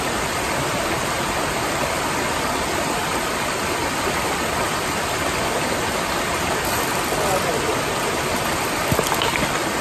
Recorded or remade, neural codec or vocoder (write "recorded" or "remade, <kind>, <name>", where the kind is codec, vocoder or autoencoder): recorded